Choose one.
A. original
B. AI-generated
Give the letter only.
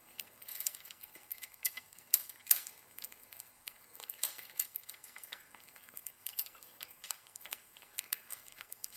B